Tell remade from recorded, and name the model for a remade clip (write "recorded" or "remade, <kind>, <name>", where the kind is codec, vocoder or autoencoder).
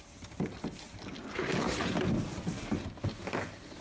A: recorded